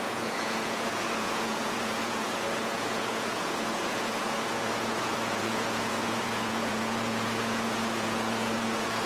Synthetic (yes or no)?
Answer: yes